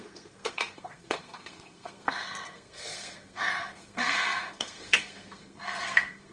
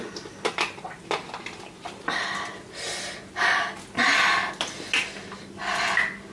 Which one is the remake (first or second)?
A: first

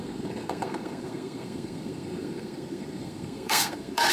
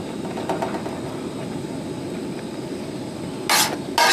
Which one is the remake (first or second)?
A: first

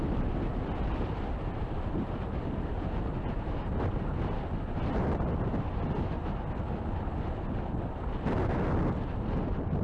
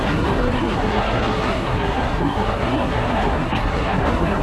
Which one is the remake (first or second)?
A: second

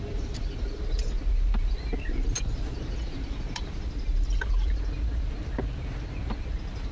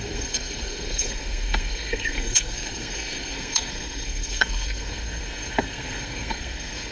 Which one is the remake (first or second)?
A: second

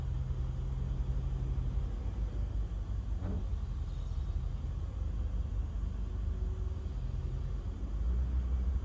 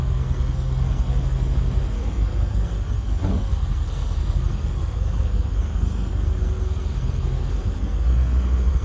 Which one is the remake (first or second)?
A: second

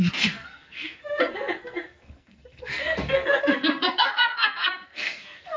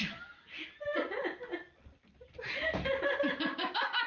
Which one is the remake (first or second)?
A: first